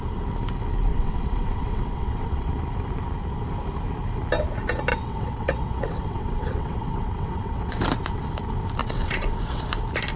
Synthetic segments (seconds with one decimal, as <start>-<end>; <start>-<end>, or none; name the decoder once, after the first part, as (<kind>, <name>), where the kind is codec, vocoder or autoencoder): 0.9-2.5 (vocoder, WaveNeXt); 4.9-7.7; 8.8-9.6